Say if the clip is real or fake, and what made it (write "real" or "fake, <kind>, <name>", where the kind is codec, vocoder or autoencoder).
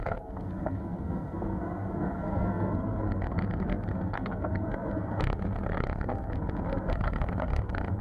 fake, codec, SNAC